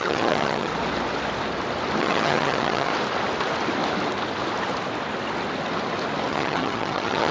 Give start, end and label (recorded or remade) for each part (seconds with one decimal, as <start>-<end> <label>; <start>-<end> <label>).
0.0-0.7 remade; 0.7-2.0 recorded; 2.0-2.9 remade; 2.9-6.3 recorded; 6.3-7.3 remade